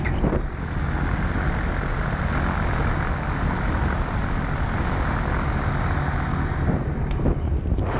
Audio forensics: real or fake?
real